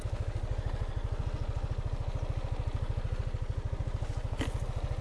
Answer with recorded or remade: recorded